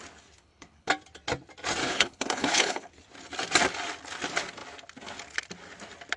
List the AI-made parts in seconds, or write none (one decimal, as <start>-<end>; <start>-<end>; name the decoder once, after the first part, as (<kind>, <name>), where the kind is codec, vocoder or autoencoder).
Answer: 0.4-0.9 (codec, HILCodec); 1.8-2.9